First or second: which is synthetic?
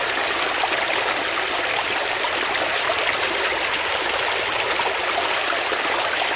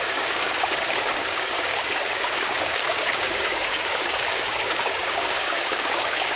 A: second